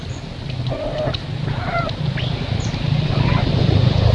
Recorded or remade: recorded